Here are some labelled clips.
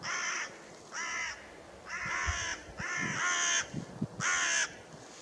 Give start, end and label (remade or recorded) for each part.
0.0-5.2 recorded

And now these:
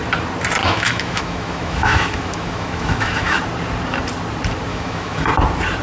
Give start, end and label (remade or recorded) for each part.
0.0-0.6 recorded; 0.6-3.4 remade; 3.4-4.7 recorded; 4.7-5.3 remade; 5.3-5.8 recorded

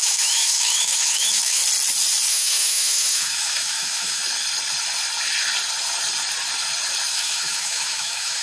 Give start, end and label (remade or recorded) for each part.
0.0-1.6 remade; 1.6-2.3 recorded; 2.3-4.2 remade; 4.2-7.1 recorded; 7.1-8.4 remade

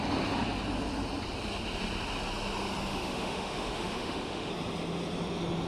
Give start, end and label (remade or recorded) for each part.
0.0-2.9 recorded; 2.9-4.5 remade; 4.5-5.7 recorded

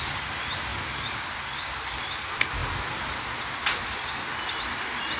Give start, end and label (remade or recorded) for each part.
0.0-5.2 recorded

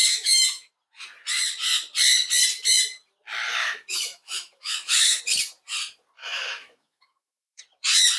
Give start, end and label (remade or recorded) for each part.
0.0-0.7 remade; 0.7-3.6 recorded; 3.6-5.2 remade; 5.2-6.2 recorded; 6.2-7.6 remade; 7.6-8.2 recorded

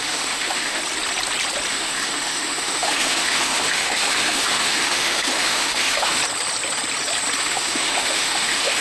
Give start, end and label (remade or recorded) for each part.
0.0-0.8 remade; 0.8-1.7 recorded; 1.7-6.2 remade; 6.2-7.4 recorded; 7.4-8.8 remade

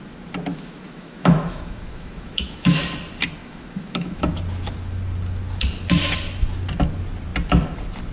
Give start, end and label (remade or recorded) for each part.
0.0-0.5 recorded; 0.5-2.8 remade; 2.8-3.4 recorded; 3.4-4.2 remade; 4.2-8.1 recorded